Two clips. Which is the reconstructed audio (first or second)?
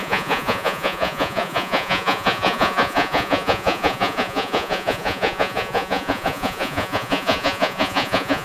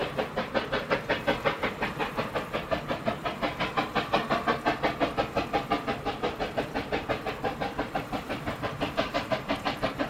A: first